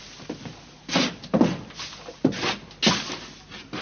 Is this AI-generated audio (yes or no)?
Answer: no